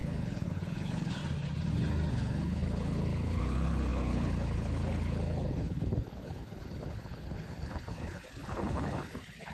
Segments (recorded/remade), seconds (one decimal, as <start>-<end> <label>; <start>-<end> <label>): 0.0-1.2 remade; 1.2-2.1 recorded; 2.1-9.5 remade